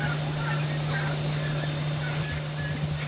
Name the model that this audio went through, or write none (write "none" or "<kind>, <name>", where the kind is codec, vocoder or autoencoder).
none